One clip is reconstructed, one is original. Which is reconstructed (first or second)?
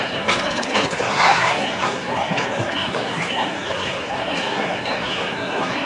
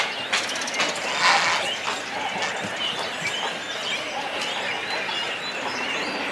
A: first